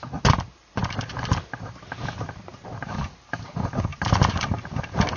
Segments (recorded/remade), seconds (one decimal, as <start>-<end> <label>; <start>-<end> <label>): 0.0-0.8 recorded; 0.8-2.9 remade; 2.9-3.9 recorded; 3.9-4.8 remade; 4.8-5.2 recorded